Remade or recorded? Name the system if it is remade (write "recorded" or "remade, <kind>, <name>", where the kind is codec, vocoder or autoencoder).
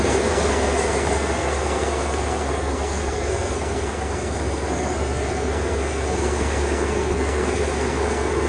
remade, codec, SNAC